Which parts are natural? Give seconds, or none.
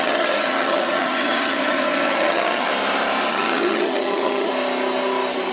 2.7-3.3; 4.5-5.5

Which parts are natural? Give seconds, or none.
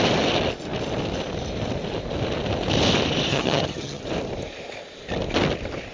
0.0-3.3; 4.0-5.9